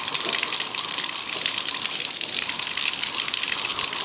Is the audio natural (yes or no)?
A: no